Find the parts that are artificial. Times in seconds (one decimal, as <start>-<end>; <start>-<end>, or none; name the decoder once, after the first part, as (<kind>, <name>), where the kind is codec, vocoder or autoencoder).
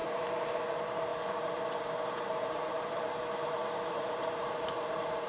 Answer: 0.0-5.3 (vocoder, BigVGAN v2)